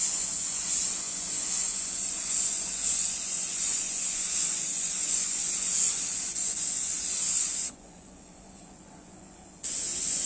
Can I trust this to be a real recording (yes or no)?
no